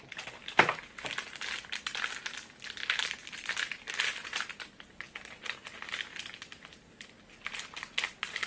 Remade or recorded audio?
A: recorded